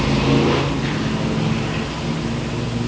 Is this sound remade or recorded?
recorded